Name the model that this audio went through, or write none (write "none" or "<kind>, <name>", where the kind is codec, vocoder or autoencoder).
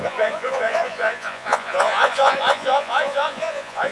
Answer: vocoder, Vocos